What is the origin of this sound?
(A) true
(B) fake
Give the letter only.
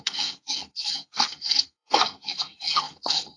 B